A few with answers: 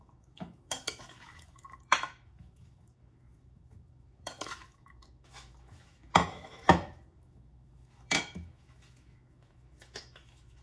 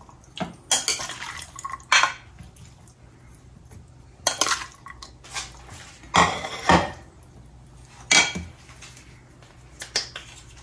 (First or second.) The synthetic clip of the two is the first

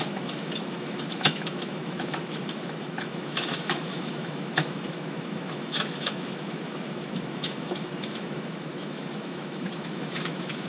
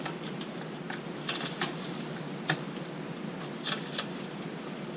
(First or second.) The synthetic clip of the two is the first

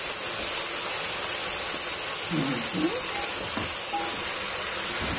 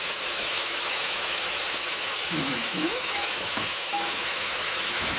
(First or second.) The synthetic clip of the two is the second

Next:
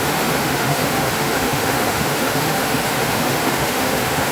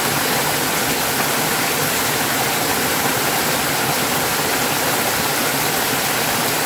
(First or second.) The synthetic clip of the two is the first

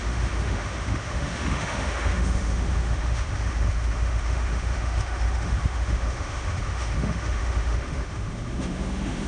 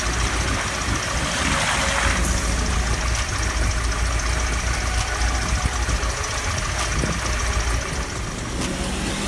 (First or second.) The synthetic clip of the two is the first